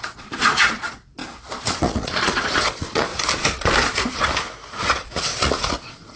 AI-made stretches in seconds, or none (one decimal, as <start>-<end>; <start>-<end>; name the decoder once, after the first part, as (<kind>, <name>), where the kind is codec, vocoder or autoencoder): 0.0-3.1 (vocoder, Vocos); 4.7-6.2